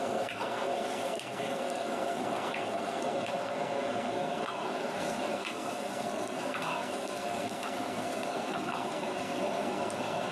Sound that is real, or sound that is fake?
fake